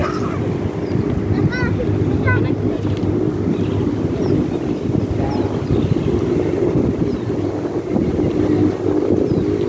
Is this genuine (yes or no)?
yes